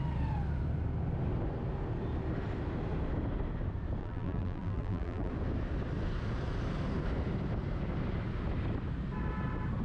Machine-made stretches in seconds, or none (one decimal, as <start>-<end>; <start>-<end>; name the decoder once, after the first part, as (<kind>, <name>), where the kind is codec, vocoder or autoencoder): 4.0-5.3 (vocoder, BigVGAN v2)